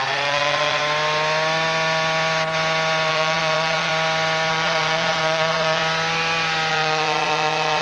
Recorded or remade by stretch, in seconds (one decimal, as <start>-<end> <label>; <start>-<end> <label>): 0.0-0.8 remade; 0.8-3.1 recorded; 3.1-3.9 remade; 3.9-4.5 recorded; 4.5-5.8 remade; 5.8-6.7 recorded; 6.7-7.8 remade